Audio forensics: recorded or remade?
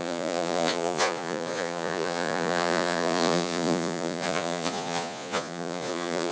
remade